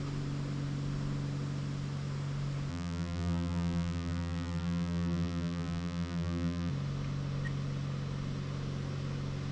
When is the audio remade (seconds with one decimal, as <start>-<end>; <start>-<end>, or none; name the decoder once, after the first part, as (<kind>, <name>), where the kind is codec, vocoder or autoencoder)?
2.7-6.7 (vocoder, BigVGAN v2)